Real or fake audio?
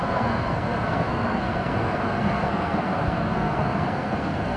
fake